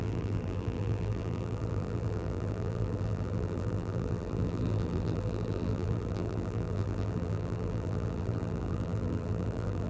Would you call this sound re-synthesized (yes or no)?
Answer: yes